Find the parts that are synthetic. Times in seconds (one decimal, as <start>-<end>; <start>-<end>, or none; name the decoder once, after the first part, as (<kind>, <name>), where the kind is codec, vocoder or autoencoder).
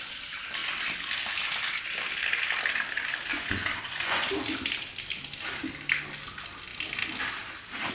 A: 3.3-4.3 (vocoder, Vocos)